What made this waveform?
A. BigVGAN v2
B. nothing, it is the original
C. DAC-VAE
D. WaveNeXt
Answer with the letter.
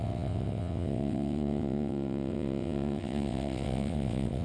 D